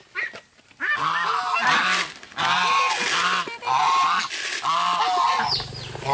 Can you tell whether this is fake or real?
real